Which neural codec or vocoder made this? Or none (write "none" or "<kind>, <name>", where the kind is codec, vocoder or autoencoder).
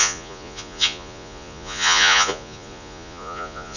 vocoder, Vocos